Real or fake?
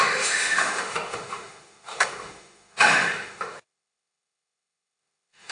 fake